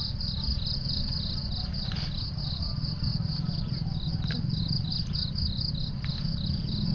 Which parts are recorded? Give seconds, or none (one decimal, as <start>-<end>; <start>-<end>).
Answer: 0.0-6.9